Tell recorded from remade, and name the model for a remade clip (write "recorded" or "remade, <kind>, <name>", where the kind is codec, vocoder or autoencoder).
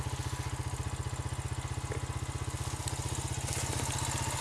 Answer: recorded